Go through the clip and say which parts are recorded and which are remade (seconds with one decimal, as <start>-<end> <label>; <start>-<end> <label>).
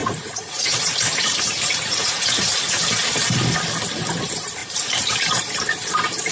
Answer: 0.0-2.8 remade; 2.8-6.3 recorded